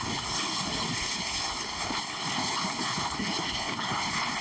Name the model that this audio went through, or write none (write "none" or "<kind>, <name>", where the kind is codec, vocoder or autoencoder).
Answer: codec, HILCodec